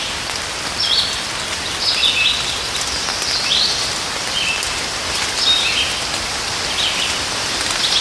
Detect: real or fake real